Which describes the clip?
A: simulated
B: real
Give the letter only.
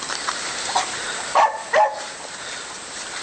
A